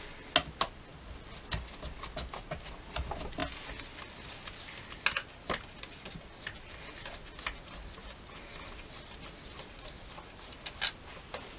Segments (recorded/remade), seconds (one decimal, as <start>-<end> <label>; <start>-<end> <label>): 0.0-11.6 recorded